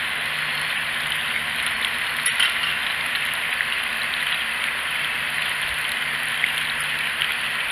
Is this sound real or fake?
real